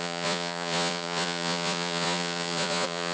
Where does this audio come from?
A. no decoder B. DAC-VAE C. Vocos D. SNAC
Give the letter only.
C